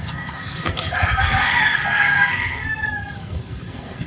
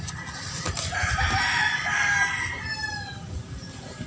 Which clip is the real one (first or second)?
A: second